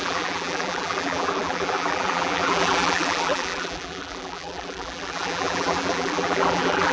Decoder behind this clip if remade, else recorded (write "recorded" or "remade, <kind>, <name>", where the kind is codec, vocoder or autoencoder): remade, vocoder, BigVGAN v2